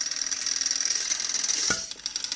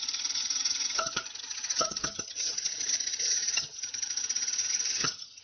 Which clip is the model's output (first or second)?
second